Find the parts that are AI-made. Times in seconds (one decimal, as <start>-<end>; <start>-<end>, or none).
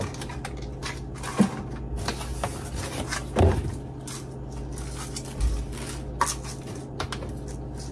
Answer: none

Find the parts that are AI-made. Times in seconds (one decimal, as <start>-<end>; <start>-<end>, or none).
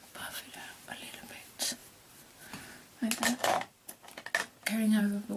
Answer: none